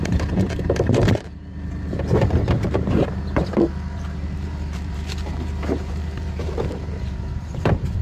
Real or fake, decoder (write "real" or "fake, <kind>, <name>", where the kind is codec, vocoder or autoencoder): fake, vocoder, BigVGAN v2